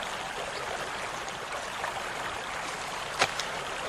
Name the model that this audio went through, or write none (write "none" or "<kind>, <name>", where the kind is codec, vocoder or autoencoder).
none